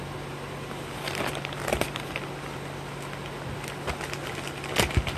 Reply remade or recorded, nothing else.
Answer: recorded